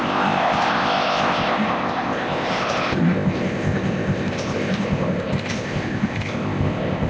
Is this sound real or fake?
fake